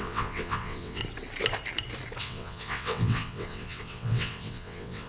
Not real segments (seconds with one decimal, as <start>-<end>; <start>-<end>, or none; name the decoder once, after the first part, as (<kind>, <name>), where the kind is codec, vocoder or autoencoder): 0.0-1.0 (vocoder, WaveNeXt); 2.2-5.1